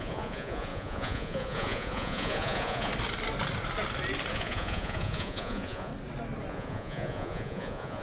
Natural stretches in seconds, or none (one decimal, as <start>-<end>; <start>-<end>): 2.9-4.3; 5.9-6.5